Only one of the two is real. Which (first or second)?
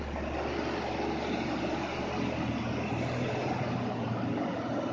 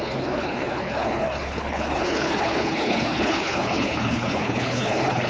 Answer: first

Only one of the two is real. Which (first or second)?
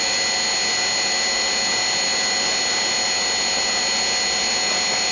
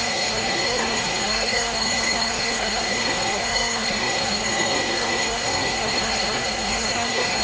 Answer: first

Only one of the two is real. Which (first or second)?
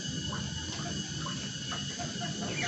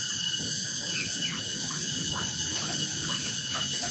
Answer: first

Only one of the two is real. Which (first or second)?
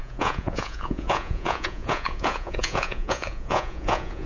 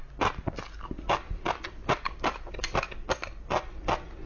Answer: second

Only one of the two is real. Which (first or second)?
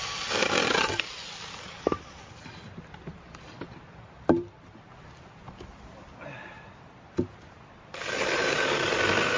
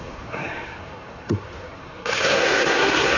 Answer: first